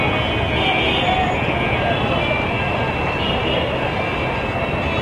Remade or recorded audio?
recorded